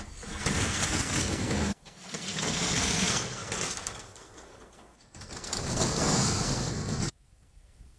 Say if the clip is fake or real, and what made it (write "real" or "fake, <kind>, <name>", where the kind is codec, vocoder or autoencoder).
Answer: fake, codec, SNAC